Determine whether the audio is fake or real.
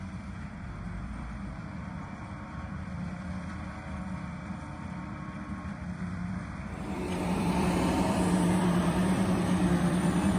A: fake